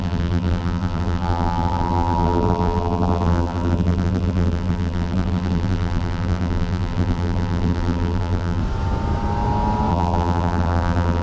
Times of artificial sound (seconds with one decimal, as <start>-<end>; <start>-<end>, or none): 0.0-8.6; 9.9-11.2